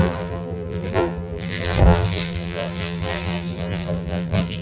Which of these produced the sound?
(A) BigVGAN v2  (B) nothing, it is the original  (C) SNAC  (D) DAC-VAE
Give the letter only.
A